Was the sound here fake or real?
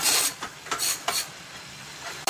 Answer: real